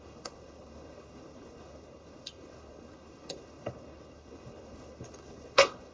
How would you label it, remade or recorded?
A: remade